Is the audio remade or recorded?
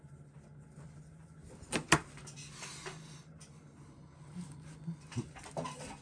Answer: recorded